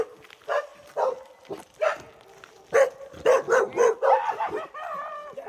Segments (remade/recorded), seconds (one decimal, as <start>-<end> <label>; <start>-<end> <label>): 0.0-5.5 recorded